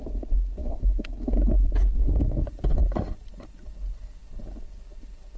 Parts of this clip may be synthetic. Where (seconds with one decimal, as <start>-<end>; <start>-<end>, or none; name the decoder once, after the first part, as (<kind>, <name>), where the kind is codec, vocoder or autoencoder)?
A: 0.6-1.3 (autoencoder, DAC-VAE)